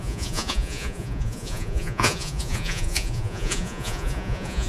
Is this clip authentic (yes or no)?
no